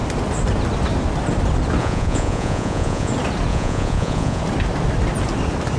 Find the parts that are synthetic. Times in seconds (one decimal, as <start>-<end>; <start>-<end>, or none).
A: 1.8-3.1; 3.5-4.4